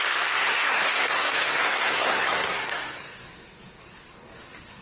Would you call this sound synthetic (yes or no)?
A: yes